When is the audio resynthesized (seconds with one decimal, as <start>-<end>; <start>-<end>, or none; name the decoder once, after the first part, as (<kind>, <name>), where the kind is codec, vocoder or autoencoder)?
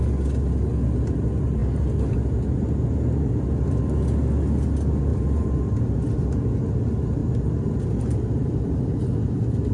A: 5.1-5.8 (vocoder, BigVGAN v2); 7.2-9.0